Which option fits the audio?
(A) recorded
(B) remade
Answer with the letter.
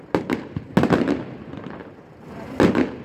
A